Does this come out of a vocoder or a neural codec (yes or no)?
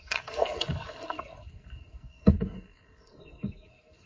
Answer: yes